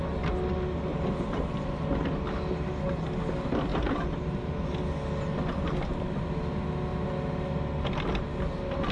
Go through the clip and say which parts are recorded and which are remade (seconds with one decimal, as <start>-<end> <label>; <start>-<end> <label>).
0.0-0.9 recorded; 0.9-1.9 remade; 1.9-3.7 recorded; 3.7-4.5 remade; 4.5-8.9 recorded